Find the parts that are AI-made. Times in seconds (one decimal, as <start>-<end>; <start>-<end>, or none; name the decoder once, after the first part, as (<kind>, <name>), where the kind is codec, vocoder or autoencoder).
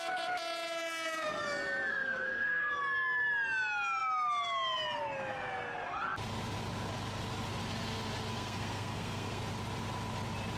1.9-2.7 (codec, SNAC); 8.3-9.4